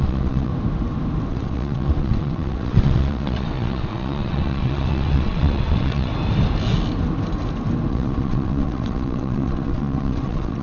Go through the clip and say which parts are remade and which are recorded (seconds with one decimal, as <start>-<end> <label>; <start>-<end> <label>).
0.0-0.5 remade; 0.5-1.3 recorded; 1.3-6.1 remade; 6.1-7.9 recorded; 7.9-10.6 remade